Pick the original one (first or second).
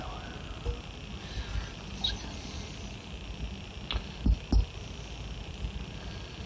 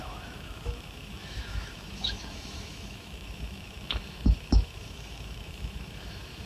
first